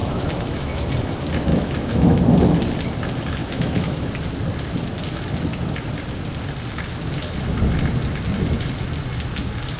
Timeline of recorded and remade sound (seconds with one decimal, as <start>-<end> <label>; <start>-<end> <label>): 0.0-0.9 remade; 0.9-1.5 recorded; 1.5-2.2 remade; 2.2-3.4 recorded; 3.4-4.1 remade; 4.1-9.8 recorded